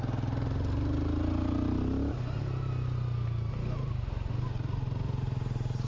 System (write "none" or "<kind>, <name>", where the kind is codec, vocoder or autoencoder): none